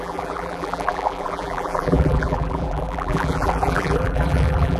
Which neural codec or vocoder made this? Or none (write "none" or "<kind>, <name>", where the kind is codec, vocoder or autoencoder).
vocoder, BigVGAN v2